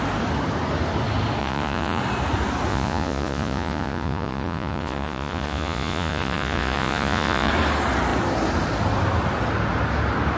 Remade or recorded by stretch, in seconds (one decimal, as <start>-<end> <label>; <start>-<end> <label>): 0.0-1.4 recorded; 1.4-2.0 remade; 2.0-2.7 recorded; 2.7-7.5 remade; 7.5-10.4 recorded